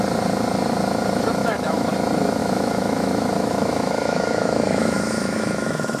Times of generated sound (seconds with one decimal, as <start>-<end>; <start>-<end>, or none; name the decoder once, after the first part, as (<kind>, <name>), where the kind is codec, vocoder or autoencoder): 1.4-1.9 (autoencoder, DAC-VAE); 2.4-6.0